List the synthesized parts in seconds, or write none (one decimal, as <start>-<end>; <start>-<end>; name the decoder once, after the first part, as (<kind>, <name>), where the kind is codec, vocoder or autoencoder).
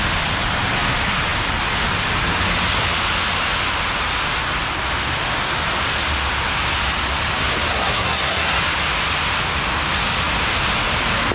7.7-8.6 (codec, SNAC)